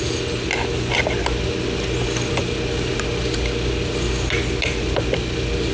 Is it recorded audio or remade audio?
recorded